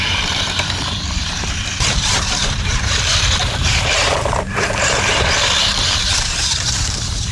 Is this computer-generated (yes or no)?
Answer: yes